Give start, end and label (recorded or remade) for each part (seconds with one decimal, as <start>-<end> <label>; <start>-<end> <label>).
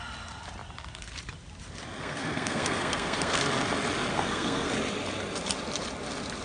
0.0-2.0 recorded; 2.0-3.4 remade; 3.4-4.1 recorded; 4.1-4.7 remade; 4.7-6.4 recorded